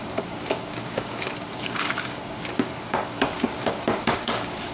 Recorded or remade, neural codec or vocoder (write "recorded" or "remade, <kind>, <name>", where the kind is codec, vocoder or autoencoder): remade, codec, DAC